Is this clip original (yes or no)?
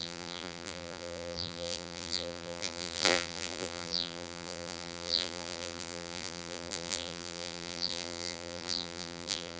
no